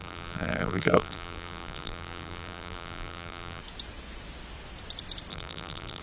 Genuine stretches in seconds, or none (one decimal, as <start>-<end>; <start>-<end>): 3.6-5.3